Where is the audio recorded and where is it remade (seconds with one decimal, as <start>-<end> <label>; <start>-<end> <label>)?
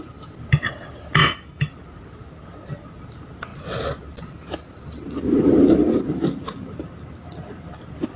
0.0-1.2 recorded; 1.2-1.7 remade; 1.7-8.2 recorded